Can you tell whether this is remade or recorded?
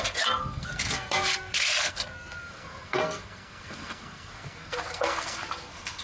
remade